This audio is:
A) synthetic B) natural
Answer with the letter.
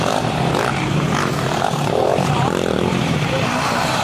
A